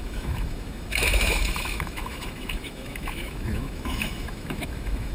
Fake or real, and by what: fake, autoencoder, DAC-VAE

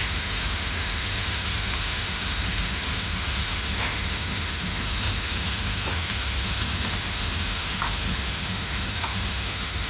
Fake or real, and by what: fake, autoencoder, DAC-VAE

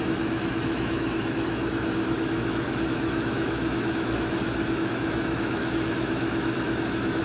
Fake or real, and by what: fake, autoencoder, DAC-VAE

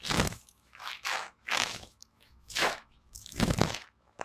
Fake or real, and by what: fake, autoencoder, DAC-VAE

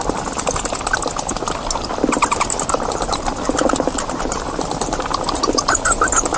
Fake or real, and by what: real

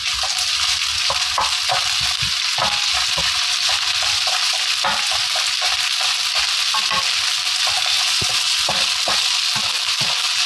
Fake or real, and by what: real